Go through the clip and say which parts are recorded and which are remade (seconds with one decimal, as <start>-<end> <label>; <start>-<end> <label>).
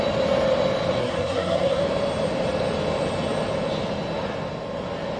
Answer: 0.0-1.0 recorded; 1.0-1.8 remade; 1.8-5.2 recorded